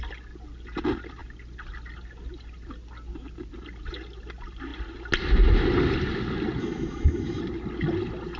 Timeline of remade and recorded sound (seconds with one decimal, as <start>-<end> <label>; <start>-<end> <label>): 0.0-6.6 recorded; 6.6-7.4 remade; 7.4-8.4 recorded